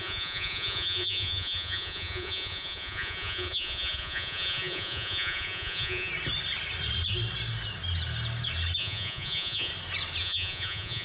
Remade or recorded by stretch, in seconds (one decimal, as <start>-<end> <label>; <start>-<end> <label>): 0.0-6.1 remade; 6.1-8.8 recorded; 8.8-9.7 remade; 9.7-10.2 recorded; 10.2-11.0 remade